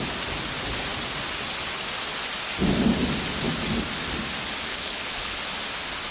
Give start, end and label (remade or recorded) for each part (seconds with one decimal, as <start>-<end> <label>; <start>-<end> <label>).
0.0-4.7 recorded; 4.7-5.4 remade; 5.4-6.1 recorded